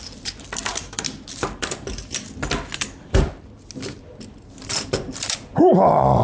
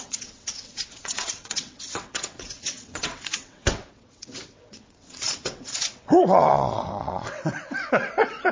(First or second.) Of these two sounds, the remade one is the second